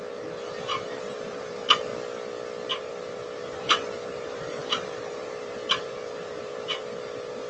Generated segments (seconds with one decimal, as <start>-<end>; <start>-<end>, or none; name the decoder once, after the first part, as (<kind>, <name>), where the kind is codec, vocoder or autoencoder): 0.0-1.9 (vocoder, BigVGAN v2); 2.7-7.5

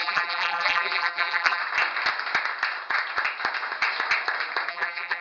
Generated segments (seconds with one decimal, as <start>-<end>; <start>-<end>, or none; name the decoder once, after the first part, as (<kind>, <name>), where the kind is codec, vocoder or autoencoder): 0.0-1.6 (vocoder, BigVGAN v2); 4.7-5.2

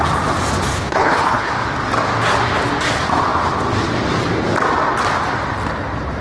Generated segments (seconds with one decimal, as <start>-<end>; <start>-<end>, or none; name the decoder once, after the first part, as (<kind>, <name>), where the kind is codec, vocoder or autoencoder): 0.7-1.5 (codec, HILCodec)

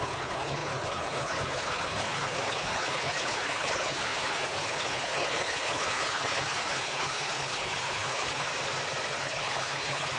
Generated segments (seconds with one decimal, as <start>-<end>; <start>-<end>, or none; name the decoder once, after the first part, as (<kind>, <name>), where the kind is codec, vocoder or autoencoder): 0.0-8.5 (codec, HILCodec); 9.2-10.2

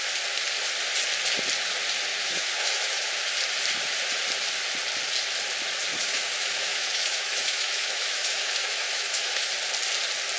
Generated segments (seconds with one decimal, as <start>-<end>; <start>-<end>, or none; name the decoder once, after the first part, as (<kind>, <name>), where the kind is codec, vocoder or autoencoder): 2.1-3.1 (autoencoder, DAC-VAE); 5.9-9.5

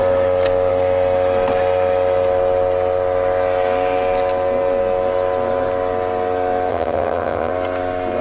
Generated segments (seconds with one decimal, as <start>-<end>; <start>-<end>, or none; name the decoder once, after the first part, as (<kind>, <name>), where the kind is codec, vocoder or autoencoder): 6.7-7.5 (vocoder, HiFi-GAN)